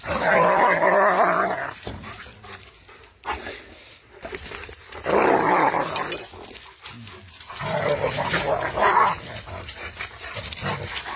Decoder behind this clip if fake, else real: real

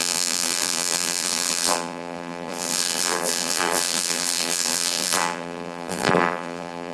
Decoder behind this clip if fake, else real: fake, vocoder, BigVGAN v2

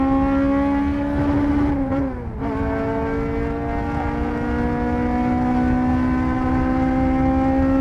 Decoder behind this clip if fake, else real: real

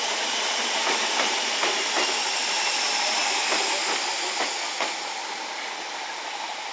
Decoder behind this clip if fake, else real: real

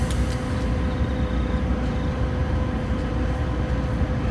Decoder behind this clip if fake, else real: real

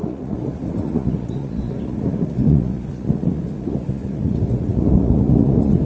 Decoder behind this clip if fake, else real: fake, vocoder, Vocos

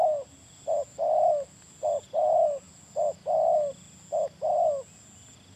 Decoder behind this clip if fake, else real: real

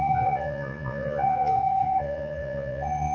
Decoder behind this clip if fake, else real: fake, vocoder, Vocos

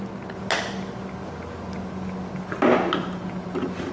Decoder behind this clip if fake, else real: real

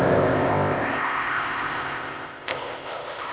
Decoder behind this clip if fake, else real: fake, codec, ZipCodec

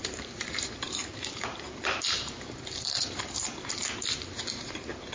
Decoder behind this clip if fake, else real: fake, vocoder, BigVGAN v2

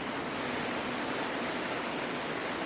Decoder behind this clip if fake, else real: real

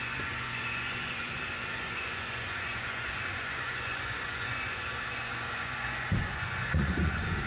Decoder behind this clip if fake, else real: fake, vocoder, Vocos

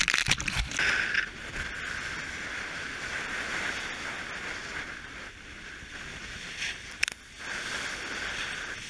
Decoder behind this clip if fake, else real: real